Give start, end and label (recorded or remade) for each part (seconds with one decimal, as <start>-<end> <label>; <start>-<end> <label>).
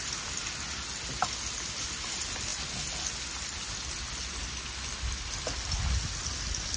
0.0-6.8 recorded